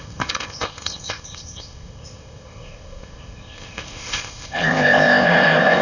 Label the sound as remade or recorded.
remade